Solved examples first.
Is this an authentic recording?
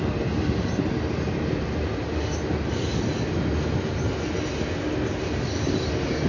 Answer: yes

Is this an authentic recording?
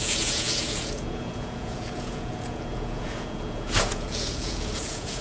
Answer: no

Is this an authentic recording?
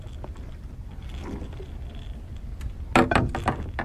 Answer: yes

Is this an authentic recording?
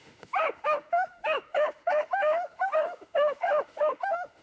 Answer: no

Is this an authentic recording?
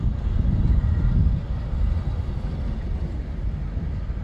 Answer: yes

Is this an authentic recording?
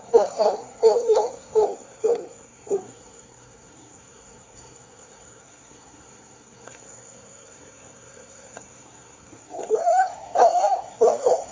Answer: no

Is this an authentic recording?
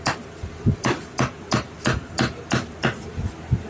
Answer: no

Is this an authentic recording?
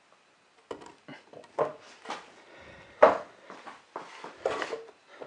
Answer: yes